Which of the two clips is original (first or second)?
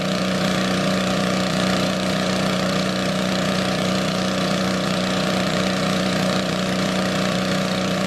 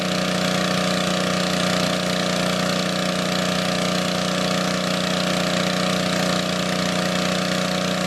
second